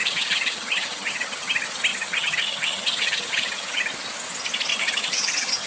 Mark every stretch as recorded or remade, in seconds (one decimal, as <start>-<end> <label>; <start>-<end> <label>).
0.0-1.5 remade; 1.5-1.9 recorded; 1.9-3.8 remade; 3.8-4.7 recorded; 4.7-5.7 remade